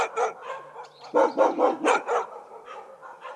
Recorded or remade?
recorded